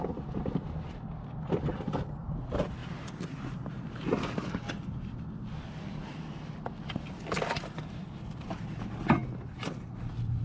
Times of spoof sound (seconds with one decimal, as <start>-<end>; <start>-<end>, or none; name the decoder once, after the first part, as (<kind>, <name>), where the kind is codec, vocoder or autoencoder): none